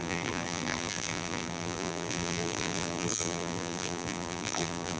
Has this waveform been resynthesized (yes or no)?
yes